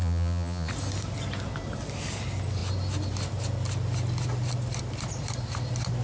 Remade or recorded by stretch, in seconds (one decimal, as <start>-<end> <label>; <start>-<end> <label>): 0.0-0.7 remade; 0.7-6.0 recorded